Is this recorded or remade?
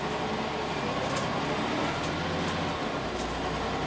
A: recorded